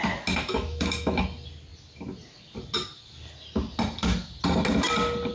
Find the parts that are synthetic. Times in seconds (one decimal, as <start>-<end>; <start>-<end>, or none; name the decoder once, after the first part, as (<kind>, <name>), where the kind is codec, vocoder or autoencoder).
0.4-1.2 (autoencoder, DAC-VAE)